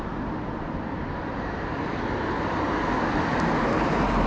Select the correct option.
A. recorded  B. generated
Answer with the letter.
A